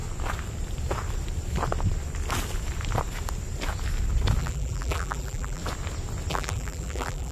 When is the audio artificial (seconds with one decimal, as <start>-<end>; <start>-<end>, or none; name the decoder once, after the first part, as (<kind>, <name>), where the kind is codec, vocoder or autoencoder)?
4.4-5.6 (vocoder, BigVGAN v2); 6.3-7.3